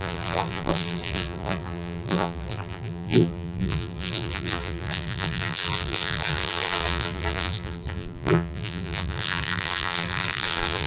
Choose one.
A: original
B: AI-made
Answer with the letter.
B